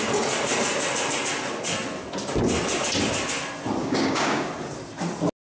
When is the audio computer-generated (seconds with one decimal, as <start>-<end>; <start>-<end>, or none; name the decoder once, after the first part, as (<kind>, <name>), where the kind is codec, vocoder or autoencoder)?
3.8-4.4 (codec, DAC)